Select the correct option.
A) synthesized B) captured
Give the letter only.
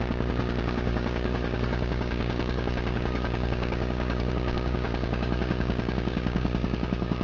A